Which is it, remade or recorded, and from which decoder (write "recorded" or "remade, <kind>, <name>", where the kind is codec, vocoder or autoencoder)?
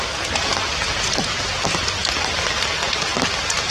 recorded